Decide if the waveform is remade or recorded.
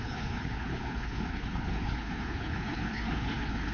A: remade